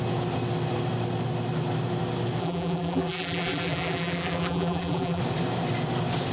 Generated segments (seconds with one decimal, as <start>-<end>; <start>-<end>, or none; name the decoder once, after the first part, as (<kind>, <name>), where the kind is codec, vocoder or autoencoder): 2.4-5.2 (vocoder, BigVGAN v2)